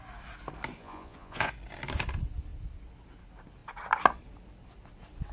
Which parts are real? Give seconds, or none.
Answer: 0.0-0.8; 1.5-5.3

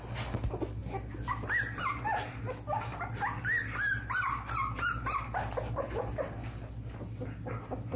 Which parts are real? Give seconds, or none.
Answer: 0.0-8.0

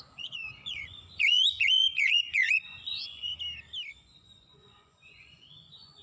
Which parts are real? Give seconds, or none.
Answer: 3.3-3.9

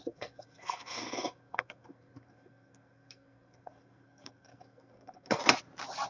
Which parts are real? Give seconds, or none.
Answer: 5.4-6.1